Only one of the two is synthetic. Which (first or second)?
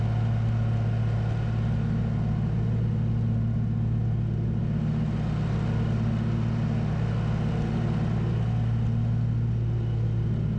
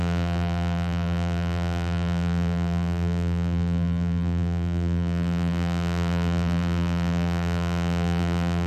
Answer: second